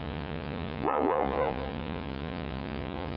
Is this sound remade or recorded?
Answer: remade